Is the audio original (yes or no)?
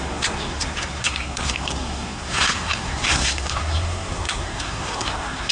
no